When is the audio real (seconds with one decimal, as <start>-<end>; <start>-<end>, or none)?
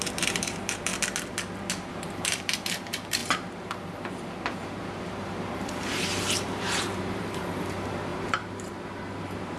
0.9-1.7